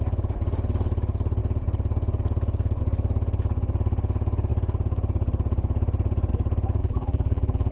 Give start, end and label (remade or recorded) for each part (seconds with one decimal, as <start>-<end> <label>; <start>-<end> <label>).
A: 0.0-6.8 recorded; 6.8-7.7 remade